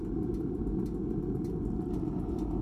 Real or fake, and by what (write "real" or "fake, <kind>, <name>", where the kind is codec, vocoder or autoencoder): real